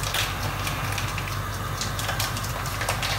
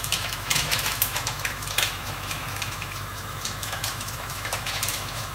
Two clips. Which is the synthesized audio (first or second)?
second